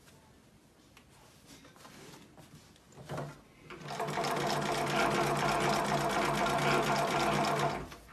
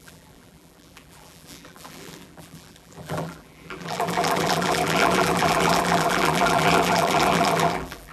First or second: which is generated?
second